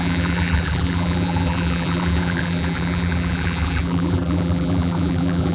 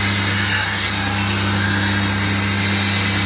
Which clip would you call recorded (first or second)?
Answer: second